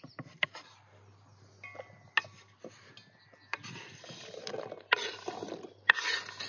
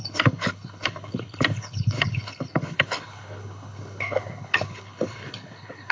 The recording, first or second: first